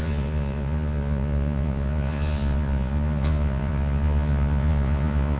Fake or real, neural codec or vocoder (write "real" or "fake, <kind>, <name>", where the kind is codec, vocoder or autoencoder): fake, vocoder, Vocos